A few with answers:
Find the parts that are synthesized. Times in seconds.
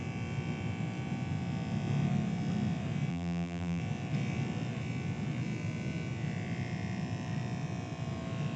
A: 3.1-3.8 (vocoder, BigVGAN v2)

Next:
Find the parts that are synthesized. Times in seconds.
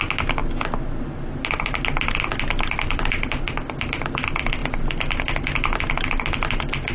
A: none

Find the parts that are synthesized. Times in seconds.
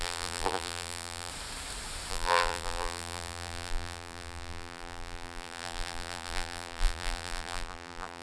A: 0.0-1.3 (vocoder, BigVGAN v2); 2.1-8.2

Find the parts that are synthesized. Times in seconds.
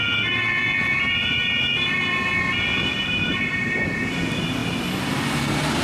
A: none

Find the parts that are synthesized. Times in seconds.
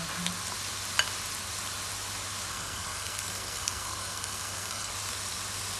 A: 2.5-4.9 (codec, SNAC)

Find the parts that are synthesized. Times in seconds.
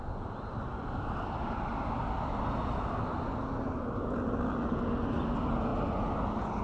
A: none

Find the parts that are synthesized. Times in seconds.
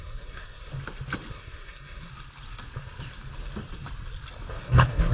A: 0.0-0.7 (codec, SNAC); 1.3-2.1; 4.5-5.1